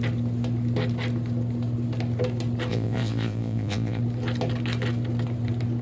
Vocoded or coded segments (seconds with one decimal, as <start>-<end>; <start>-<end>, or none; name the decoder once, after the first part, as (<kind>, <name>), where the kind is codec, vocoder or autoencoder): 2.7-4.0 (vocoder, Vocos)